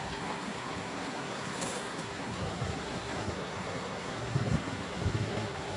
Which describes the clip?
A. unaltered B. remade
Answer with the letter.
B